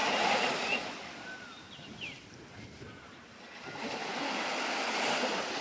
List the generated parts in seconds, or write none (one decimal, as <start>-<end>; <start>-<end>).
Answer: 0.0-3.4